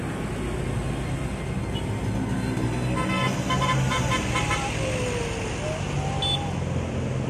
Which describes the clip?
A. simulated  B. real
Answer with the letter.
B